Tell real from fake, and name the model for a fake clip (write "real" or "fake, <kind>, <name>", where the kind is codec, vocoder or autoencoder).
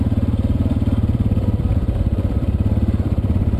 fake, vocoder, BigVGAN v2